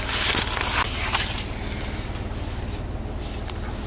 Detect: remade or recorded recorded